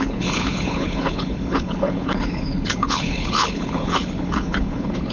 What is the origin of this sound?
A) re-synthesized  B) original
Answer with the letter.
A